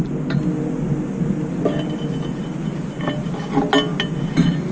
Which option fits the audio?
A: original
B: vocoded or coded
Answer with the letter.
A